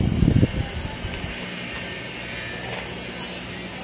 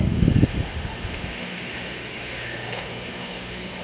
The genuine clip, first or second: first